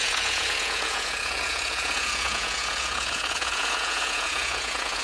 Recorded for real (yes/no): no